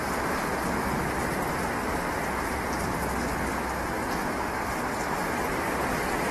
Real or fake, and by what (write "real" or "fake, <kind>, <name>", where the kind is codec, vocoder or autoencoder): real